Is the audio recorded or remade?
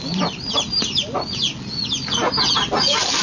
recorded